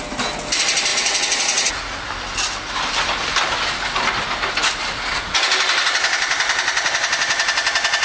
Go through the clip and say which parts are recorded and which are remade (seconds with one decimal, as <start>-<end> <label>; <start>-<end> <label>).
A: 0.0-0.9 recorded; 0.9-2.1 remade; 2.1-8.0 recorded